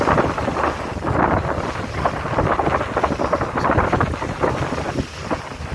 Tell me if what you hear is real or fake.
real